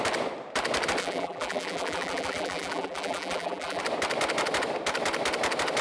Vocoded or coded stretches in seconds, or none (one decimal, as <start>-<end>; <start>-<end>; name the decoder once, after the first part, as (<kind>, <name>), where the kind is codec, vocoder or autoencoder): 1.0-3.8 (vocoder, BigVGAN v2)